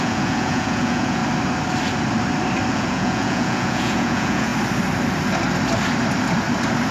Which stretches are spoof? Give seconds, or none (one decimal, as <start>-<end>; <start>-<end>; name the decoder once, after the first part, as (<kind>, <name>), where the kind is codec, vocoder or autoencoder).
0.0-1.2 (vocoder, Vocos); 2.7-4.5